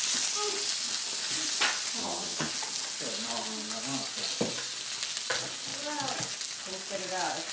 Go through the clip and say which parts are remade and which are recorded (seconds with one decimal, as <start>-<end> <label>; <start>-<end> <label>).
0.0-2.0 recorded; 2.0-2.5 remade; 2.5-7.5 recorded